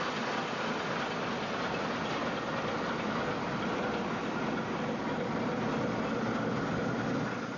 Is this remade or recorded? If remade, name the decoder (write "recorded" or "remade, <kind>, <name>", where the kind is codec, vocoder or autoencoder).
recorded